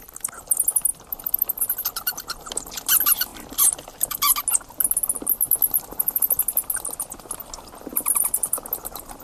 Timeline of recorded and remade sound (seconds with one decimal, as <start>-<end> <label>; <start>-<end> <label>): 0.0-7.9 recorded; 7.9-8.6 remade; 8.6-9.2 recorded